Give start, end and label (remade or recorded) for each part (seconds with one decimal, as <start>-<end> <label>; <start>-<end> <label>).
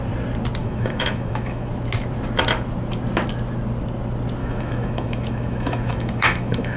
0.0-0.6 recorded; 0.6-1.7 remade; 1.7-4.4 recorded; 4.4-6.8 remade